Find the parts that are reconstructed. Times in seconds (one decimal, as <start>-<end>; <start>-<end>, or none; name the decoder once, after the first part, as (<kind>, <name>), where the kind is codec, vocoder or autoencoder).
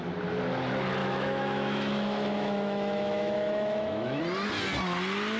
1.0-4.2 (autoencoder, DAC-VAE)